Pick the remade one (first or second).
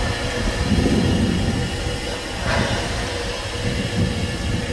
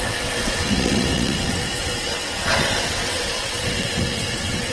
second